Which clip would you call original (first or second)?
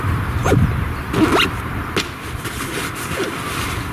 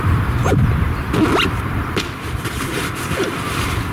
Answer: first